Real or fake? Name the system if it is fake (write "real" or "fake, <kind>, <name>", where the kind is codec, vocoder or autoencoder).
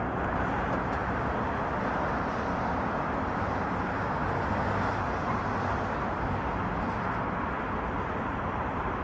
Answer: real